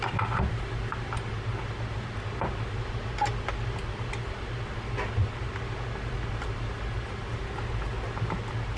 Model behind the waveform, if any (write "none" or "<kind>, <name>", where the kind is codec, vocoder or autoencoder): none